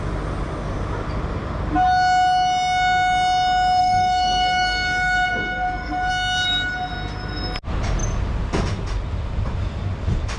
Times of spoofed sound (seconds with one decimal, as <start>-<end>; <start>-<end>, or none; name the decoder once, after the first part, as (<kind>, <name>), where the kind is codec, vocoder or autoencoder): 3.8-6.1 (codec, DAC)